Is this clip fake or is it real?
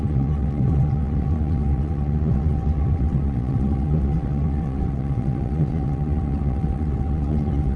fake